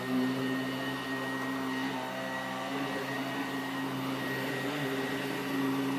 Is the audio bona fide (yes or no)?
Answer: yes